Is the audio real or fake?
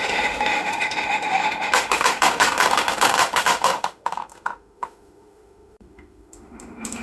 fake